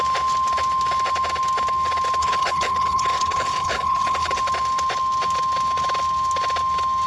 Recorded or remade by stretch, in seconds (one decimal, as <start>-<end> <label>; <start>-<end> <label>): 0.0-2.2 recorded; 2.2-4.4 remade; 4.4-7.1 recorded